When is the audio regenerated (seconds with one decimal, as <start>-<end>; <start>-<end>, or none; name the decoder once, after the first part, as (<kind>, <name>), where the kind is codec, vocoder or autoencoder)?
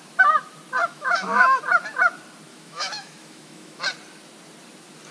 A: 0.8-1.6 (autoencoder, DAC-VAE); 2.5-3.8